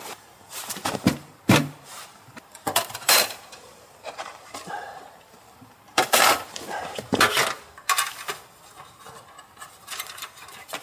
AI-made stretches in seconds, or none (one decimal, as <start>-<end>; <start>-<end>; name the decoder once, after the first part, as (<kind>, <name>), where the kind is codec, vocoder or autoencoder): 0.0-7.4 (vocoder, BigVGAN v2); 10.2-10.8